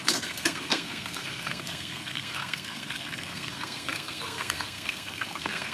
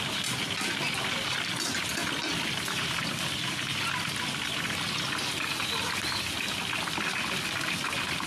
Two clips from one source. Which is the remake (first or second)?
first